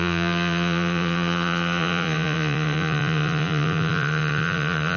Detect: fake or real fake